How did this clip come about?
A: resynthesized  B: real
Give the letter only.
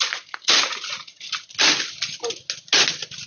B